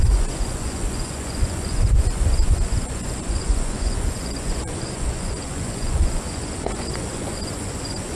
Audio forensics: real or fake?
fake